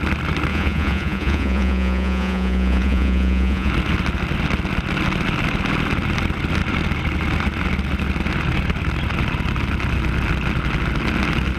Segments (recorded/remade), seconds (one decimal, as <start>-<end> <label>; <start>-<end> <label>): 0.0-0.5 recorded; 0.5-3.7 remade; 3.7-11.6 recorded